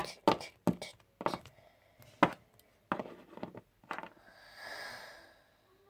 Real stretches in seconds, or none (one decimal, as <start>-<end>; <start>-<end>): 0.0-5.9